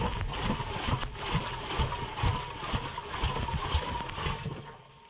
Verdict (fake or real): real